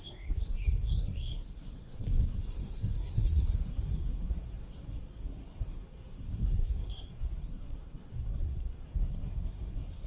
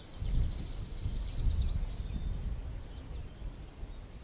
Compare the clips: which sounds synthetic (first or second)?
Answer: first